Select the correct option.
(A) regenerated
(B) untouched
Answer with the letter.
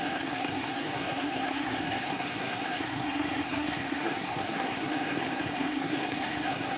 A